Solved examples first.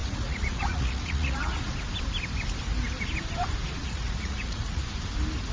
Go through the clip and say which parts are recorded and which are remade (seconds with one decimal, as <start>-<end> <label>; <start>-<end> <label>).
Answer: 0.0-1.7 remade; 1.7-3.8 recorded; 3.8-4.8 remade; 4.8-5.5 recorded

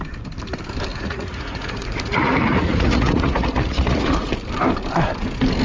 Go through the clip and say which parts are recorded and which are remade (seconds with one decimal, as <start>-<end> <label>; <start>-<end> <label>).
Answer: 0.0-0.9 recorded; 0.9-4.3 remade; 4.3-5.6 recorded

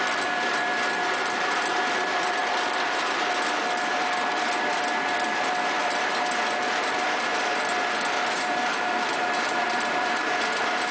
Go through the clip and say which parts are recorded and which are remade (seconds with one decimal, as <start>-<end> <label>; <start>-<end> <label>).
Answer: 0.0-2.4 remade; 2.4-3.6 recorded; 3.6-10.9 remade

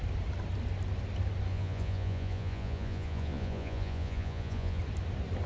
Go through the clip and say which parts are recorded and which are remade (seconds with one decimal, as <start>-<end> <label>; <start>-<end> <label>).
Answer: 0.0-1.5 recorded; 1.5-4.8 remade; 4.8-5.5 recorded

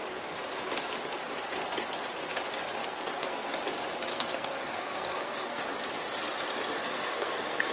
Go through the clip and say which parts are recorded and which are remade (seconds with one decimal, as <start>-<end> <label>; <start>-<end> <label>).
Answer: 0.0-2.8 recorded; 2.8-3.5 remade; 3.5-4.1 recorded; 4.1-5.6 remade; 5.6-6.8 recorded; 6.8-7.7 remade

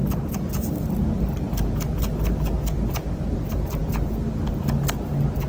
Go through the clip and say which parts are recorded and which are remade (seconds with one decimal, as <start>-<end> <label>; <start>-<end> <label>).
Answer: 0.0-3.8 recorded; 3.8-4.5 remade; 4.5-5.5 recorded

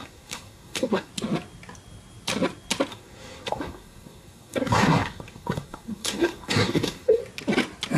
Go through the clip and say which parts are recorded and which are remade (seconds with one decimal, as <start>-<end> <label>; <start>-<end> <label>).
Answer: 0.0-1.1 remade; 1.1-2.9 recorded; 2.9-7.2 remade; 7.2-8.0 recorded